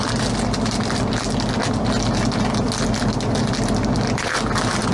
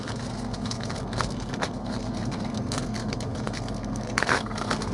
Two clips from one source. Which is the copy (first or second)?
second